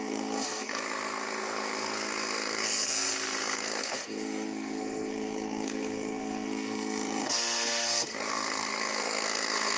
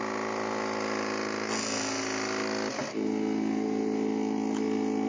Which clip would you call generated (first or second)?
first